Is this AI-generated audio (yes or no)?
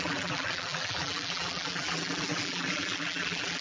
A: yes